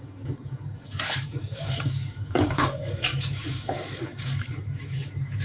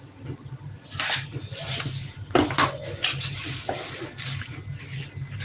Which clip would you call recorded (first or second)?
second